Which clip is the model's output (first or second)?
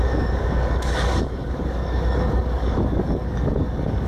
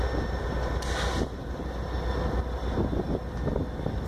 first